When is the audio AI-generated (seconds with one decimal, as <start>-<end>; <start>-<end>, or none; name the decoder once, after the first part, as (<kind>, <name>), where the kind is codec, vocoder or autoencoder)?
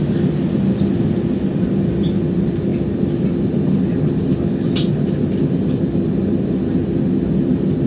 none